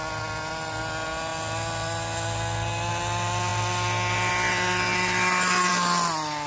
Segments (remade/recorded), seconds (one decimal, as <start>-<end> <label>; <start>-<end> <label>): 0.0-6.5 recorded